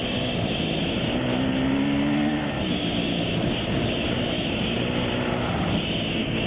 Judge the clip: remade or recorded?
recorded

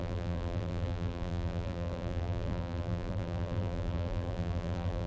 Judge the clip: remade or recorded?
remade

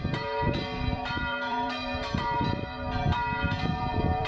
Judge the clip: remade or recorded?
remade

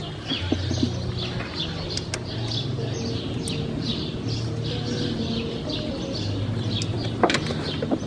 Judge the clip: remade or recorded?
recorded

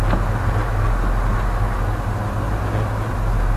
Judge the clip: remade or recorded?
recorded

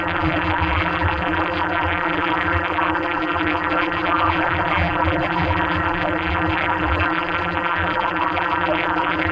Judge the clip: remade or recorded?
remade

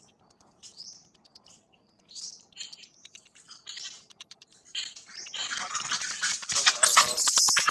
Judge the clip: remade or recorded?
remade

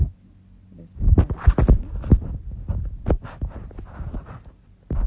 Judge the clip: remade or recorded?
recorded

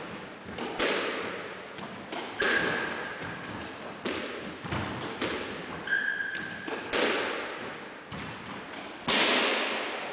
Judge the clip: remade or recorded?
recorded